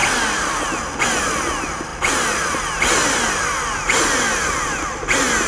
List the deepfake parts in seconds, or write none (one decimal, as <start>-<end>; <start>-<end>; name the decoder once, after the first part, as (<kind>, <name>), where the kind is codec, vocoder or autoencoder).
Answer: none